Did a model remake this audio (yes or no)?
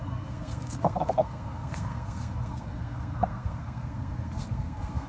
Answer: yes